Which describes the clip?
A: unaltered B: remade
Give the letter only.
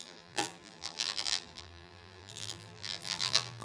B